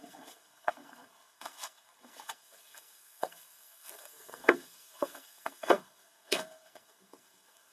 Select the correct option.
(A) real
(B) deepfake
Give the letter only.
B